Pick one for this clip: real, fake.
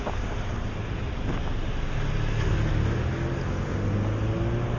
real